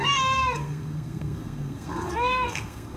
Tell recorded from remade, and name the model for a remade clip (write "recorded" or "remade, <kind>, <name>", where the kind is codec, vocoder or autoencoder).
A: remade, codec, SNAC